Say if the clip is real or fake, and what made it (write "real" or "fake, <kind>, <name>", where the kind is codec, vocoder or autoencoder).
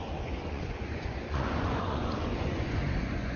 fake, vocoder, Vocos